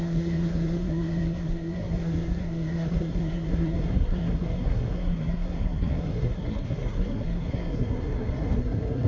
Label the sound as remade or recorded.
remade